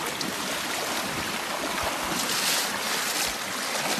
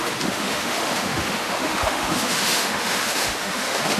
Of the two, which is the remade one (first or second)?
second